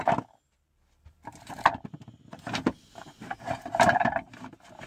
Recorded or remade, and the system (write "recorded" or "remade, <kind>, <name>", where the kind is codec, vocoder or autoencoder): recorded